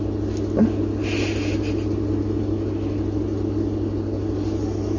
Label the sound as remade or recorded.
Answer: recorded